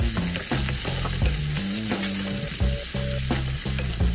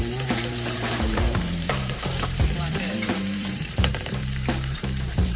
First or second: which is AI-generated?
second